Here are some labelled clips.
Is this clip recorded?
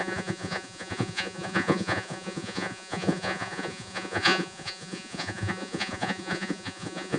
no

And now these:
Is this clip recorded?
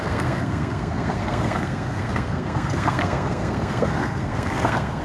no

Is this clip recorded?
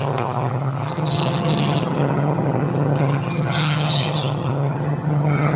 no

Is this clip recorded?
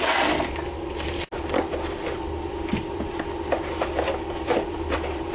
yes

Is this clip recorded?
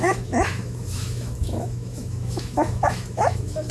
no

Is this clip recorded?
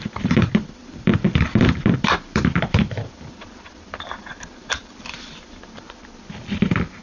no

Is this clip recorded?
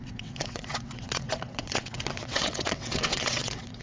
no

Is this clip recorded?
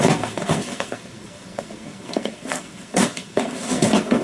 no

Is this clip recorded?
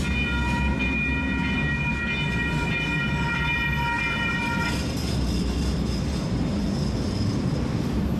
yes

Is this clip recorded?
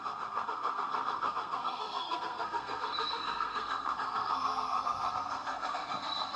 no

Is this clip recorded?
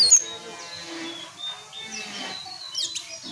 yes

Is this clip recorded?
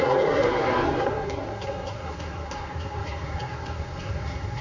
no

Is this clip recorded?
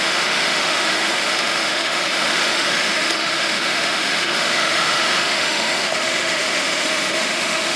no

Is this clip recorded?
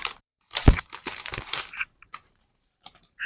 no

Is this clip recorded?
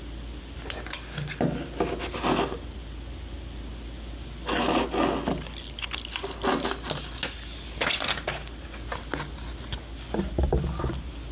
yes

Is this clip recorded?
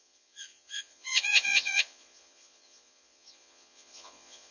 no